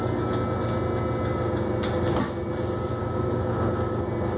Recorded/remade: recorded